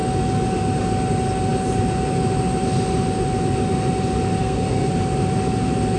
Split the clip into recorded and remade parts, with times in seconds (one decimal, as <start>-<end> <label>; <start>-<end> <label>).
0.0-4.4 recorded; 4.4-4.9 remade; 4.9-6.0 recorded